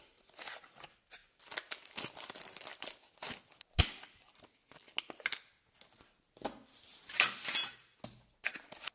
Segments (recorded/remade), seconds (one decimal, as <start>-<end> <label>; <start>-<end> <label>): 0.0-2.7 recorded; 2.7-3.8 remade; 3.8-8.9 recorded